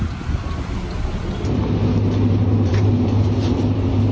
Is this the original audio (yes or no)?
yes